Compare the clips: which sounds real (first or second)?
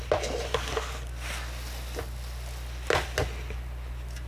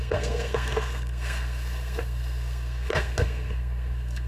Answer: first